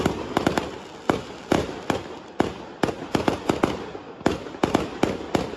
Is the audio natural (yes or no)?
yes